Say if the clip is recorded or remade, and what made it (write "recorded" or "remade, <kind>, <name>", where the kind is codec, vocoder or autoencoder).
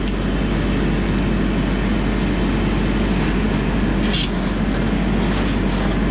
recorded